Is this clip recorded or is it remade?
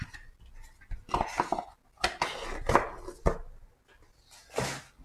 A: recorded